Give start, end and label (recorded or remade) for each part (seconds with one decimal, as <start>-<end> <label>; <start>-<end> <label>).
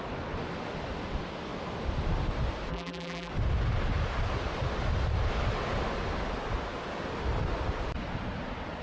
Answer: 0.0-2.7 recorded; 2.7-3.3 remade; 3.3-8.8 recorded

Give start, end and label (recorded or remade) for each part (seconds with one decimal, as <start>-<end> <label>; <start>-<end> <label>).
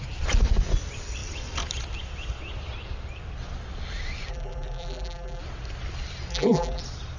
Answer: 0.0-4.3 recorded; 4.3-5.4 remade; 5.4-6.3 recorded; 6.3-6.8 remade; 6.8-7.2 recorded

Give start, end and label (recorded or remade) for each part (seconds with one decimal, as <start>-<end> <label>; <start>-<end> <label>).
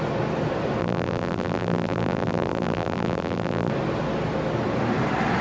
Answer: 0.0-0.8 recorded; 0.8-3.7 remade; 3.7-5.4 recorded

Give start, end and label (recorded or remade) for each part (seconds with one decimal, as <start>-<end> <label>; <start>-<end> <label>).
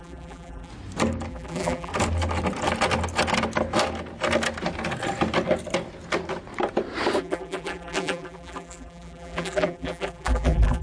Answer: 0.0-0.7 remade; 0.7-1.3 recorded; 1.3-1.9 remade; 1.9-7.2 recorded; 7.2-10.8 remade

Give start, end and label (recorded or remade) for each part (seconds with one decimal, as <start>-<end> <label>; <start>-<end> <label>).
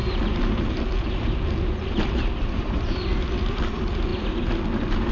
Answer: 0.0-5.1 remade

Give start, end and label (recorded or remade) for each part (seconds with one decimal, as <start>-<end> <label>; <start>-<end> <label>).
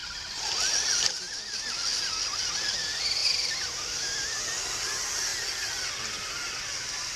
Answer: 0.0-3.2 recorded; 3.2-4.4 remade; 4.4-7.2 recorded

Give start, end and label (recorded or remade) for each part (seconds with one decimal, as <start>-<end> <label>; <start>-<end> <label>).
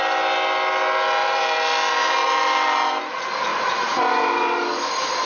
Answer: 0.0-1.2 recorded; 1.2-3.0 remade; 3.0-3.5 recorded; 3.5-5.3 remade